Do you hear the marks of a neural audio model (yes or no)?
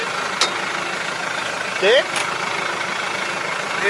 no